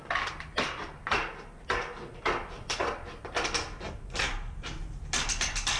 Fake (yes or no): no